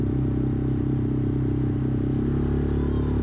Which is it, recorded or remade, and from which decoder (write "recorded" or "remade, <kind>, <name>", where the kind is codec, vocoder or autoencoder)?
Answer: recorded